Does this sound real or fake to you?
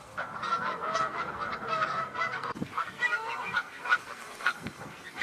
fake